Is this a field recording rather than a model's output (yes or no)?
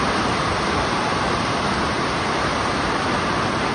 yes